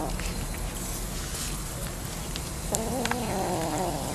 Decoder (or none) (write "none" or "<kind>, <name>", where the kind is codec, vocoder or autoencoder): none